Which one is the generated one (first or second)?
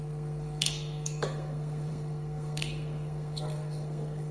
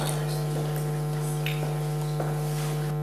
first